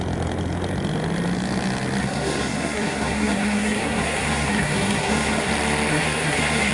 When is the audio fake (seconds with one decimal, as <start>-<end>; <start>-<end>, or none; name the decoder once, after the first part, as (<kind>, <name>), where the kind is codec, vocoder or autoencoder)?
2.0-5.5 (codec, SNAC); 5.9-6.7